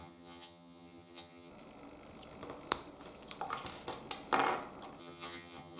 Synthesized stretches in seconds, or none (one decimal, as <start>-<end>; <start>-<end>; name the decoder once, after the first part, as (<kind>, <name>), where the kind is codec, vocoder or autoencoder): 0.0-1.5 (vocoder, HiFi-GAN); 5.0-5.8

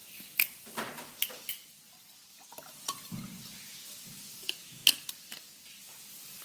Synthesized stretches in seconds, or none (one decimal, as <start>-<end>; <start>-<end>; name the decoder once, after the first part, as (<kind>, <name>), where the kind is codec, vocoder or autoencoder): 0.0-1.5 (vocoder, BigVGAN v2)

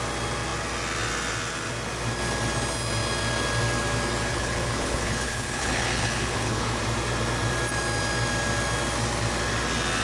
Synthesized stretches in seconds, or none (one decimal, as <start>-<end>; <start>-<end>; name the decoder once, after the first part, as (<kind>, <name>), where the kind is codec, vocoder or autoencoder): 4.3-6.8 (codec, HILCodec)